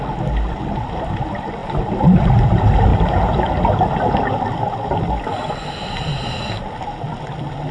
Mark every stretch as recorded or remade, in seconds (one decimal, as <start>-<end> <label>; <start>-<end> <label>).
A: 0.0-7.7 recorded